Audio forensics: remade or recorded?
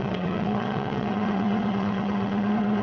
remade